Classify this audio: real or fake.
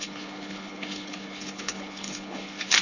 fake